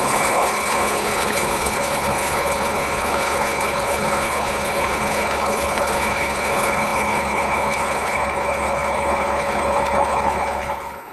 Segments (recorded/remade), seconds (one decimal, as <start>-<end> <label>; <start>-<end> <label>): 0.0-11.1 remade